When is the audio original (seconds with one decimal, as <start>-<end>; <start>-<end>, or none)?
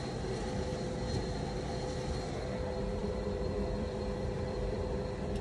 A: 0.0-3.0